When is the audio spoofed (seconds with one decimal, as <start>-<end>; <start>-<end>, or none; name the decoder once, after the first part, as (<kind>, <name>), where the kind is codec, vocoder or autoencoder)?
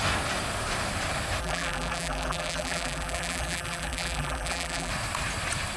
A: 1.4-4.9 (vocoder, BigVGAN v2)